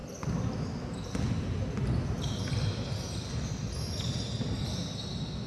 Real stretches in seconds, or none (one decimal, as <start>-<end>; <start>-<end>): 0.0-5.5